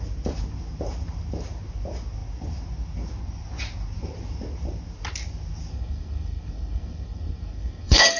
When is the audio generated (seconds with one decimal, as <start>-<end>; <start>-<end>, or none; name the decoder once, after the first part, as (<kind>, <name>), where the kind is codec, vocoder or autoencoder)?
5.7-8.2 (codec, SNAC)